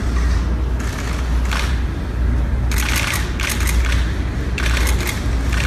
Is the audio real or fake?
real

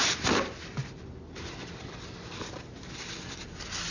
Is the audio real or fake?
real